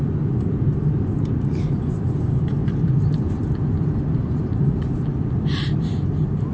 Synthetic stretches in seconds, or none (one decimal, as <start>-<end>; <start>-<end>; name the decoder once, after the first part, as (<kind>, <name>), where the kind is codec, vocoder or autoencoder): 2.6-5.6 (vocoder, BigVGAN v2)